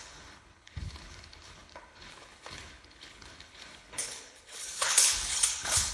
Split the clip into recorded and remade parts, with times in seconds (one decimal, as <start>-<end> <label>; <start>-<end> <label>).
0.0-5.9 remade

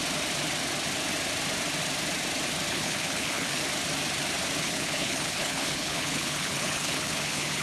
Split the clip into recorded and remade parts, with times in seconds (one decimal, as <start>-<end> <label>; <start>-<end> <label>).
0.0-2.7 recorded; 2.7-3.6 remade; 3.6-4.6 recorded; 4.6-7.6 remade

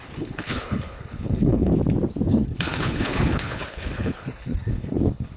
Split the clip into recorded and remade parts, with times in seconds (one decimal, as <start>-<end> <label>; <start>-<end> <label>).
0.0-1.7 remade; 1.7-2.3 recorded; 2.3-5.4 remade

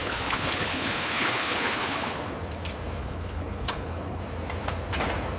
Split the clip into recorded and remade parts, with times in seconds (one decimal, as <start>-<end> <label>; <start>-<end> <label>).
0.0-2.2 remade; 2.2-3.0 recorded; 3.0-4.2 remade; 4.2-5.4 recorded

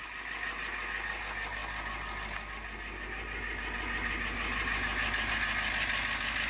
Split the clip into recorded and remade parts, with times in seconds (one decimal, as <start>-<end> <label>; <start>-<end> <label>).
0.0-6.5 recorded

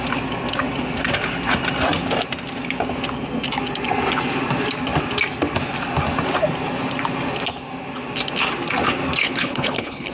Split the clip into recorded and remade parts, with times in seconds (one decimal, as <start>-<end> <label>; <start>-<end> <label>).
0.0-9.2 recorded; 9.2-10.1 remade